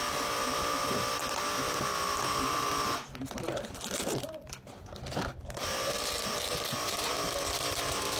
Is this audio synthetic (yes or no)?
no